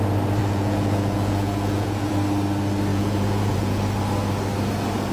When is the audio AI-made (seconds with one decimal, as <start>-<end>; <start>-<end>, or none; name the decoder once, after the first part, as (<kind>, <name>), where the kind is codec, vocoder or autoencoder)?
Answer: 0.4-2.1 (vocoder, Vocos); 2.9-3.8